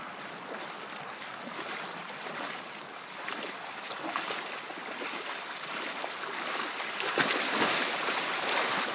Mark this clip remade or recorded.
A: recorded